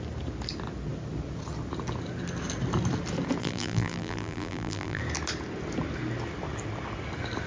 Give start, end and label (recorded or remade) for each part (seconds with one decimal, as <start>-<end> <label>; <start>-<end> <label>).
0.0-3.4 recorded; 3.4-5.0 remade; 5.0-7.5 recorded